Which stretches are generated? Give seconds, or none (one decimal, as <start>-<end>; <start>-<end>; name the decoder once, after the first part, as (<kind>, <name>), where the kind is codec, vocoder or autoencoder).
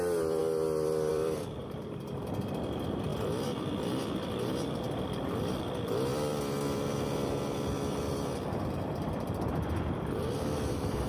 0.0-11.1 (vocoder, BigVGAN v2)